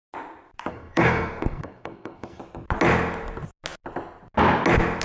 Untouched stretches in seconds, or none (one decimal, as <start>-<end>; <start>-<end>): 0.0-0.7; 2.4-5.0